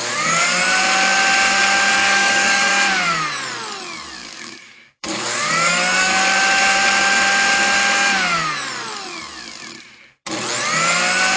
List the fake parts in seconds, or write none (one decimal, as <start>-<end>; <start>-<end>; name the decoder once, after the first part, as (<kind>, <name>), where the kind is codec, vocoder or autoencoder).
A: 0.0-0.6 (codec, DAC); 1.9-2.7; 4.2-6.2